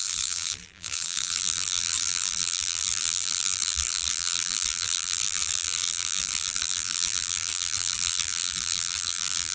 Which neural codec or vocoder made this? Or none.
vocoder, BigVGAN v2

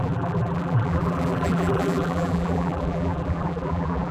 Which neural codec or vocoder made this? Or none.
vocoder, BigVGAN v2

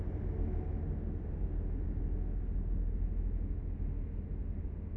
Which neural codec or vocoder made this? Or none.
none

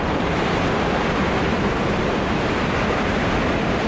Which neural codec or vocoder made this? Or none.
vocoder, BigVGAN v2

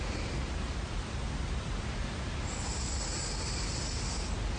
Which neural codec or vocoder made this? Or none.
vocoder, BigVGAN v2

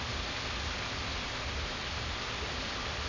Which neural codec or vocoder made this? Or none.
none